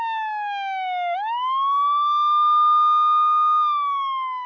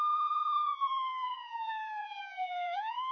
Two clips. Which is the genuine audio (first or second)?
first